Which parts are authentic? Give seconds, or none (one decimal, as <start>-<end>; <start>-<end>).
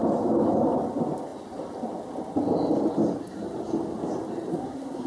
0.0-4.5